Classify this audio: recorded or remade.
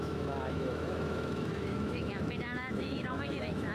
remade